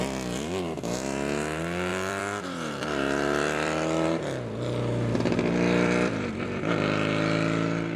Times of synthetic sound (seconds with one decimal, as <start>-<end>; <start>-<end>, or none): 1.9-6.3